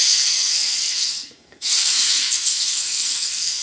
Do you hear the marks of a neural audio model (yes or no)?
yes